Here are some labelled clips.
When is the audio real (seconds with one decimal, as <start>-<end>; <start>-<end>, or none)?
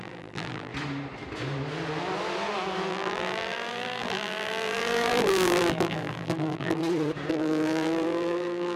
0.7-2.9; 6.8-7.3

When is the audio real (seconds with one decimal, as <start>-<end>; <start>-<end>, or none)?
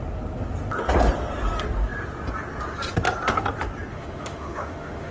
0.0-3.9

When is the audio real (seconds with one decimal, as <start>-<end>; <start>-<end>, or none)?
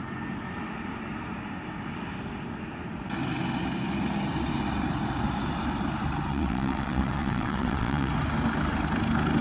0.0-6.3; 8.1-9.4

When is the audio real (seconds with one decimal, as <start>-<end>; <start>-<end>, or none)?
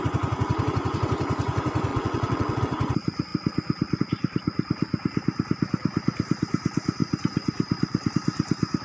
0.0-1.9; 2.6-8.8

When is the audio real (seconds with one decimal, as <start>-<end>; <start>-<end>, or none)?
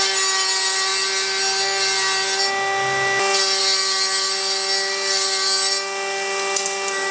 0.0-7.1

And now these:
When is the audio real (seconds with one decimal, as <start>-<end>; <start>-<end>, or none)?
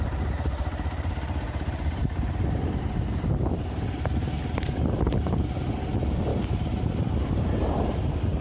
none